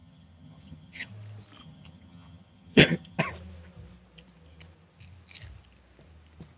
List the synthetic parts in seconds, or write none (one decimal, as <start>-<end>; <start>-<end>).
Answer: 0.0-1.1; 1.6-3.2